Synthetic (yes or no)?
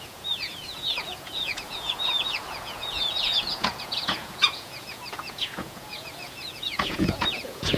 yes